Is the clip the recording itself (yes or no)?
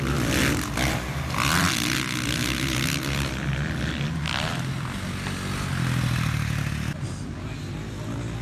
yes